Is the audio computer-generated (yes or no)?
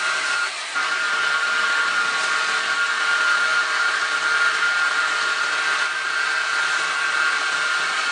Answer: no